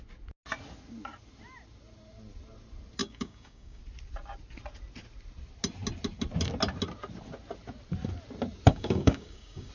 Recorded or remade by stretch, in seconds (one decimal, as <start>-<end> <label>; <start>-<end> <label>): 0.0-3.0 recorded; 3.0-3.8 remade; 3.8-8.7 recorded; 8.7-9.7 remade